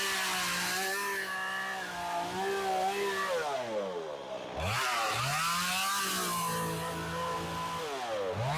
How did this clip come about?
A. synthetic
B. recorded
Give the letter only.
B